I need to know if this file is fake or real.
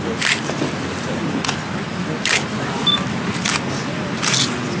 real